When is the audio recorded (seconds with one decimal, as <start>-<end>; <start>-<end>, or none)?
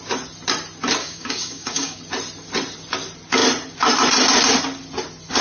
0.0-1.0; 2.0-5.4